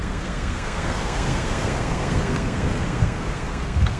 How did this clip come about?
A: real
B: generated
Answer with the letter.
B